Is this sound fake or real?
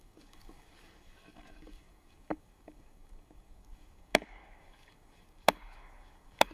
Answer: fake